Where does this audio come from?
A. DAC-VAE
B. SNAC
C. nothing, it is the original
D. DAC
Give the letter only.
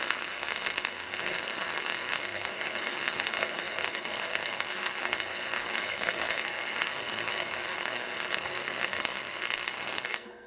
B